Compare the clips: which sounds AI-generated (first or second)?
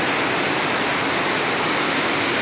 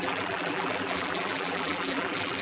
second